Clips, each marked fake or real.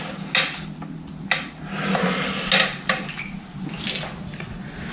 real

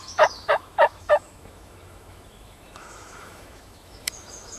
fake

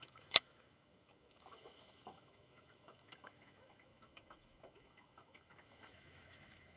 fake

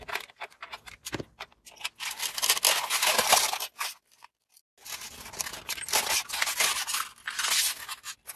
real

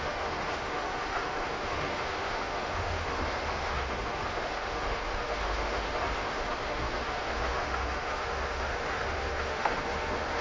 fake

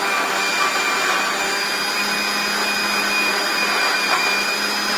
real